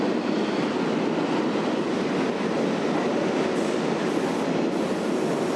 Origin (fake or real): real